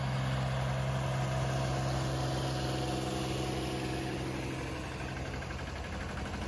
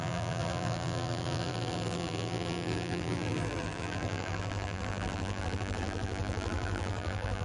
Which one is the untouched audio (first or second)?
first